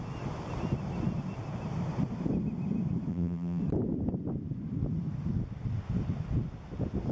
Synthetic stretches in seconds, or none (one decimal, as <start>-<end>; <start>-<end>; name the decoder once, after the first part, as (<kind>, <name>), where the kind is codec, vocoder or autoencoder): 3.1-3.6 (vocoder, BigVGAN v2)